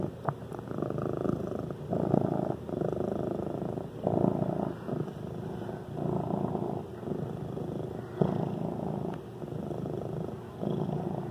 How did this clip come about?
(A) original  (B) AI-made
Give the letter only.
A